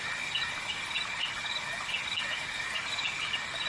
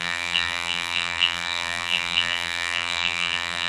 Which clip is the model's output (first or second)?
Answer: second